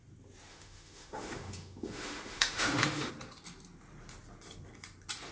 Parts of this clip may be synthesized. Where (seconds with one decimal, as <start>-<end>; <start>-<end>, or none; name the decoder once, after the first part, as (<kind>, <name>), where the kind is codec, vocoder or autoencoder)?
0.5-3.1 (autoencoder, DAC-VAE)

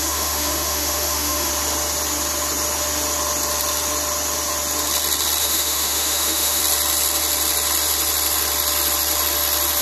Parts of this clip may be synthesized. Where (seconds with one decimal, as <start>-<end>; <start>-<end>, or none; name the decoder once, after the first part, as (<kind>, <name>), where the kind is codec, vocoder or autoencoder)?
0.0-1.5 (autoencoder, DAC-VAE); 5.4-6.6

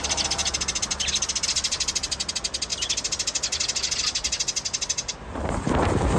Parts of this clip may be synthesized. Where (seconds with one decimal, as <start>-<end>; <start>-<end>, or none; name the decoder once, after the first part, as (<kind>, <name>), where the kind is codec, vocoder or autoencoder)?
none

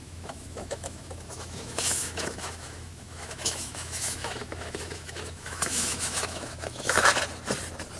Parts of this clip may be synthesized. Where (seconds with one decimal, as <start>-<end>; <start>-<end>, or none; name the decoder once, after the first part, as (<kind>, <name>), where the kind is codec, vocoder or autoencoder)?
0.0-7.1 (autoencoder, DAC-VAE)

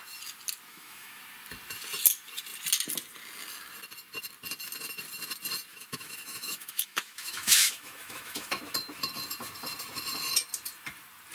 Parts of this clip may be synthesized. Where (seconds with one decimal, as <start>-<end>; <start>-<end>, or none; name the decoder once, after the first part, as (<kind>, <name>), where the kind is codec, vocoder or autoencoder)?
0.7-1.2 (autoencoder, DAC-VAE); 5.7-8.6

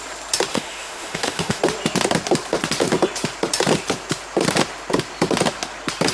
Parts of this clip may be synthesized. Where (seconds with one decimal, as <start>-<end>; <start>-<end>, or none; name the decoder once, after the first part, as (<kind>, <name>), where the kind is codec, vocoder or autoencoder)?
0.5-1.6 (autoencoder, DAC-VAE)

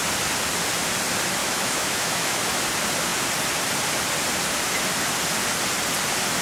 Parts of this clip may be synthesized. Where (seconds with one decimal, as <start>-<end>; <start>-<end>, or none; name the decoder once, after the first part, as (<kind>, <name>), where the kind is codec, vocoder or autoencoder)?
1.4-2.4 (autoencoder, DAC-VAE)